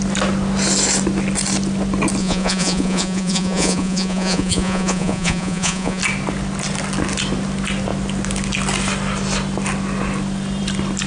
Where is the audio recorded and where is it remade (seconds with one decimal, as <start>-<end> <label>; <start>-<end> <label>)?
0.0-2.2 recorded; 2.2-6.0 remade; 6.0-11.1 recorded